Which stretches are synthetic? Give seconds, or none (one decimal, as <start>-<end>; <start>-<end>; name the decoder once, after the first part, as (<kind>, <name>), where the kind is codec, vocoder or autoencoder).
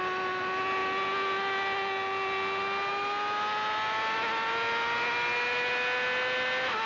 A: none